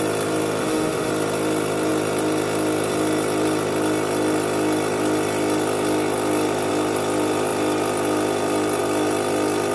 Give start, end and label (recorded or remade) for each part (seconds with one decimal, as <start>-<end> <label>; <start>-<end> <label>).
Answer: 0.0-0.6 recorded; 0.6-1.1 remade; 1.1-9.7 recorded